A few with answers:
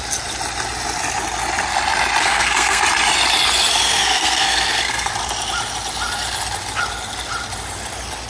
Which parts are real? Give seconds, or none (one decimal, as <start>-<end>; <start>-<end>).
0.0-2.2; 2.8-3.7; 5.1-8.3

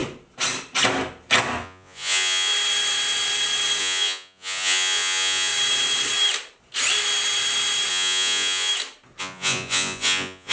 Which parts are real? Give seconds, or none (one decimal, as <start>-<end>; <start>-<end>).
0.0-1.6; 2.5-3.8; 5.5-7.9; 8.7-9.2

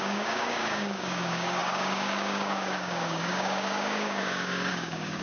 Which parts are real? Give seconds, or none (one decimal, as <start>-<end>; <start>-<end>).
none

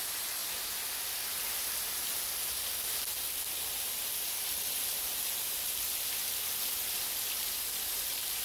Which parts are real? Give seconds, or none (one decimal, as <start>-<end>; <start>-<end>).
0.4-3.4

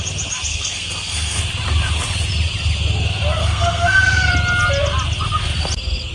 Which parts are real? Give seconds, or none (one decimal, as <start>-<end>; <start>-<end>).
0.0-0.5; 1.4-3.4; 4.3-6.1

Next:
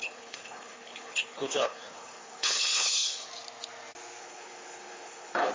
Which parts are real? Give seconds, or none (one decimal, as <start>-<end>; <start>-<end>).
3.3-4.2

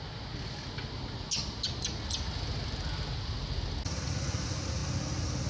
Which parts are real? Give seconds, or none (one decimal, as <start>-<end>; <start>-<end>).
0.0-5.5